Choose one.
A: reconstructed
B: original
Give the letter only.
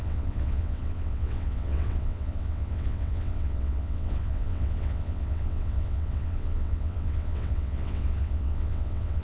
A